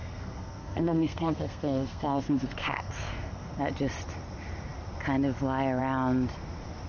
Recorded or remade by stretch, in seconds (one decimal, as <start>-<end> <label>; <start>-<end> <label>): 0.0-3.6 remade; 3.6-6.9 recorded